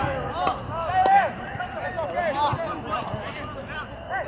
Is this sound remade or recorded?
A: recorded